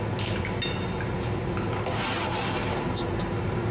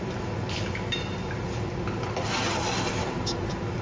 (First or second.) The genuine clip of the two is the first